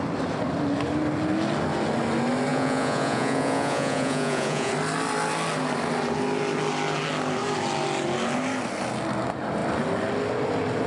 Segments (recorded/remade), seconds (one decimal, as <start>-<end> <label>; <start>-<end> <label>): 0.0-2.5 recorded; 2.5-4.7 remade; 4.7-10.9 recorded